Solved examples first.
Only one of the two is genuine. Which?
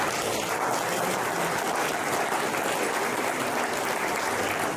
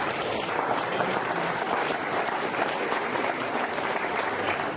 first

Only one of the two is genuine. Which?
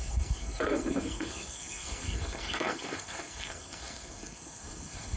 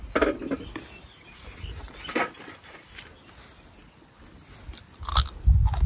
second